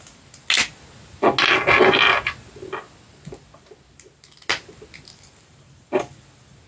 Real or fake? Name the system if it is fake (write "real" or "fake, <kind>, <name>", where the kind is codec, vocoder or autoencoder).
real